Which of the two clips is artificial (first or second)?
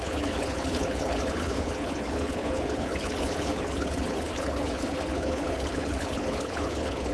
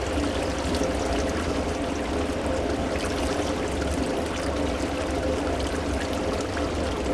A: first